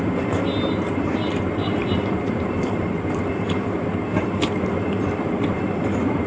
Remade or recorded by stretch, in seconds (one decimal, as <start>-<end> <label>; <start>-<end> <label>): 0.0-6.3 remade